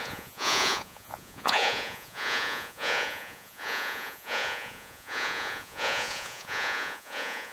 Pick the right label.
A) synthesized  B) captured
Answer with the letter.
A